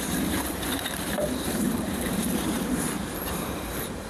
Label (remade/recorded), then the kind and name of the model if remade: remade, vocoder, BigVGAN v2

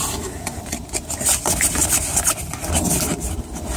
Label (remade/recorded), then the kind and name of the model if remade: recorded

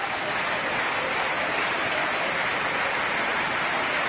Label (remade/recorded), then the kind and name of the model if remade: remade, vocoder, BigVGAN v2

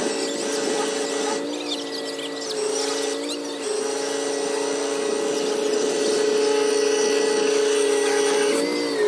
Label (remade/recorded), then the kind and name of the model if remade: recorded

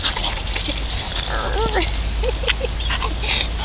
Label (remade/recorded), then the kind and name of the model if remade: remade, vocoder, BigVGAN v2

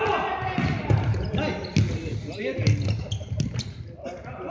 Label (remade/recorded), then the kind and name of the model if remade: recorded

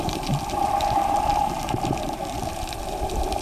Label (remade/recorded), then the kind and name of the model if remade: remade, vocoder, BigVGAN v2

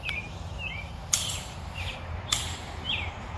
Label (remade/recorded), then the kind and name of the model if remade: remade, vocoder, BigVGAN v2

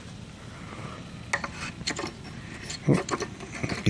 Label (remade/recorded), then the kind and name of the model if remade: recorded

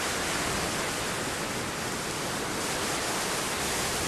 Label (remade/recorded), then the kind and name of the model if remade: recorded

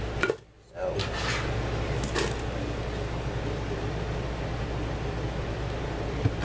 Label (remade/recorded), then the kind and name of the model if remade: recorded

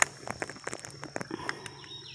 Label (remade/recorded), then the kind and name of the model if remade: recorded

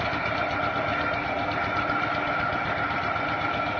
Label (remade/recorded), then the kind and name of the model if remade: remade, vocoder, BigVGAN v2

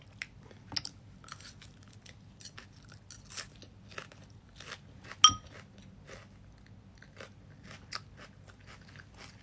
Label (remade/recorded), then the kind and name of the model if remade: recorded